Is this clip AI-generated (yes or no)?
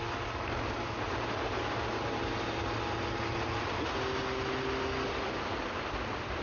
no